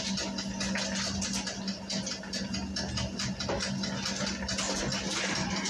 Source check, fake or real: real